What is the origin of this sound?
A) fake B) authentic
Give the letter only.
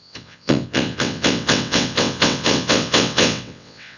A